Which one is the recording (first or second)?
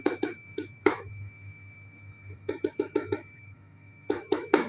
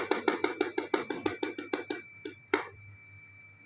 second